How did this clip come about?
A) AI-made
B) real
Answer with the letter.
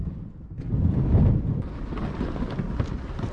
B